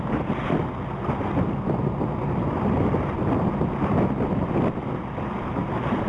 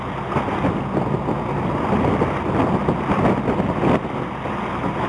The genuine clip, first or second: second